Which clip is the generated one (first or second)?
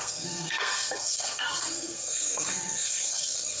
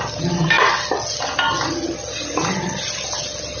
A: first